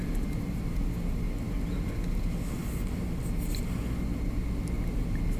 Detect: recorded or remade recorded